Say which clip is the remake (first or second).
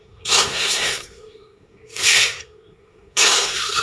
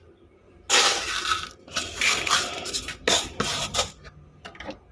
first